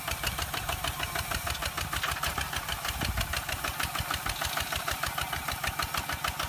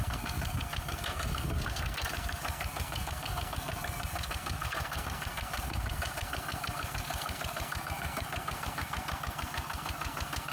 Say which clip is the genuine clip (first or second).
first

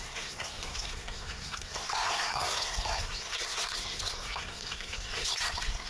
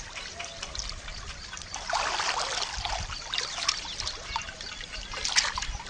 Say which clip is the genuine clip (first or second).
second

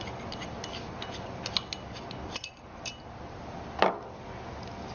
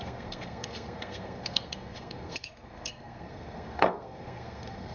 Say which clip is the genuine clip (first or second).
first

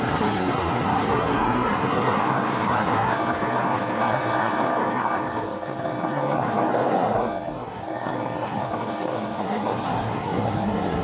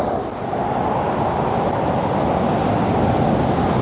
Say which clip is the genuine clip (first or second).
second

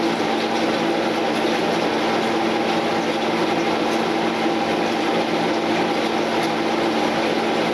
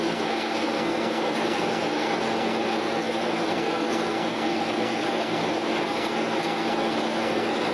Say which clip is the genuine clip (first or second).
first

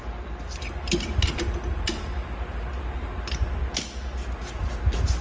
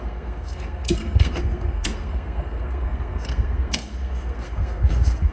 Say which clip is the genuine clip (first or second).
first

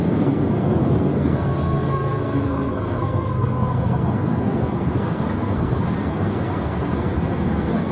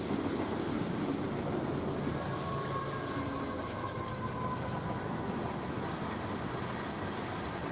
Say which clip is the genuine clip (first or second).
second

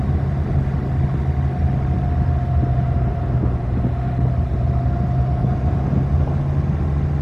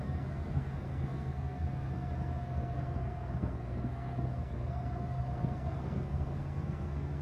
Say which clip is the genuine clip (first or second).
first